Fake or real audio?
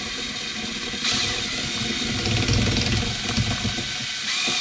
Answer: real